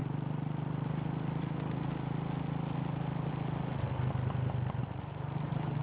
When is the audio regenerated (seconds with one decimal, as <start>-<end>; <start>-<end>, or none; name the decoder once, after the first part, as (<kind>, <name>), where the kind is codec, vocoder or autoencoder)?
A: 4.8-5.8 (vocoder, BigVGAN v2)